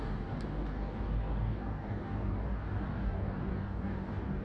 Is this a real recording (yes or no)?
no